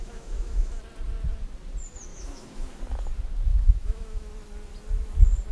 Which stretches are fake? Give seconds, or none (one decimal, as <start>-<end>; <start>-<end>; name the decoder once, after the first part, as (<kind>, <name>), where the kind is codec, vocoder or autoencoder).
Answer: 0.0-0.7 (autoencoder, DAC-VAE); 2.1-2.8; 3.5-4.3